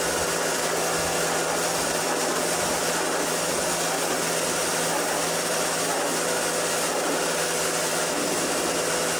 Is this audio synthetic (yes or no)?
no